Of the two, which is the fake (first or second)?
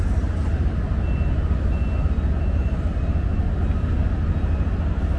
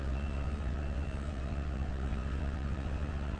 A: second